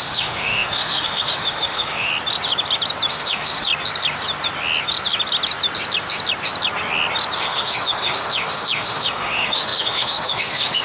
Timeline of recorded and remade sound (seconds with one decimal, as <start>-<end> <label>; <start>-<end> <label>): 0.0-2.1 remade; 2.1-3.1 recorded; 3.1-3.7 remade; 3.7-7.4 recorded; 7.4-10.8 remade